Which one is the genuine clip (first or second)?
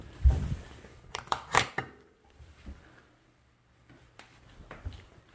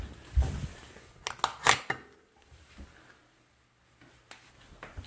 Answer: second